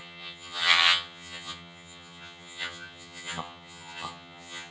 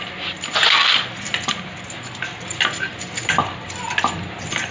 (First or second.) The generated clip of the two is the first